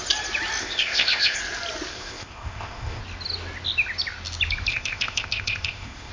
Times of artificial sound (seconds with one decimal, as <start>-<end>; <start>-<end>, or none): 0.6-1.4; 1.9-3.0; 4.7-6.1